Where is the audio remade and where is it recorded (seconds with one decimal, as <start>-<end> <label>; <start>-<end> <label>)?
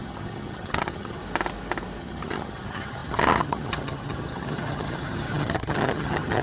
0.0-1.2 remade; 1.2-2.0 recorded; 2.0-6.4 remade